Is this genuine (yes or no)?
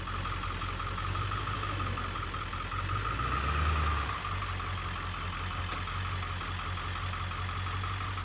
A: yes